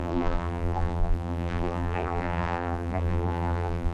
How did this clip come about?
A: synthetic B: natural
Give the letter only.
A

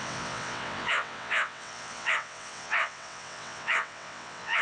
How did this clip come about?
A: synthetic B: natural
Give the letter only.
A